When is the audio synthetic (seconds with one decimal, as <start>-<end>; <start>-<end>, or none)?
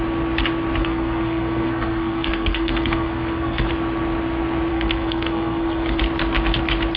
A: 0.8-3.7; 4.7-6.0